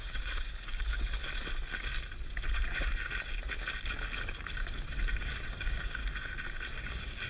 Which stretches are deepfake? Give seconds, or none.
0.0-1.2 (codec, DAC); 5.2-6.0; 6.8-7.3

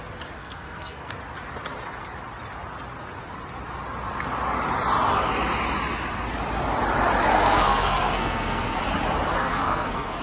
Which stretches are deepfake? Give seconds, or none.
0.4-1.1 (codec, SNAC); 7.3-8.8; 9.4-10.2

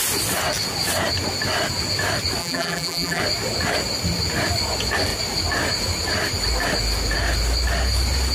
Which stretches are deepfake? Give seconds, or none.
2.4-3.2 (vocoder, BigVGAN v2)